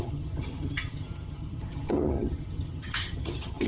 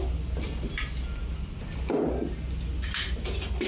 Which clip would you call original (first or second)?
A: second